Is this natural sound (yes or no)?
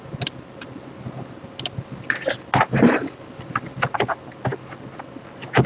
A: yes